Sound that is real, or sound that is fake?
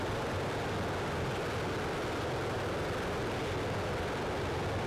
real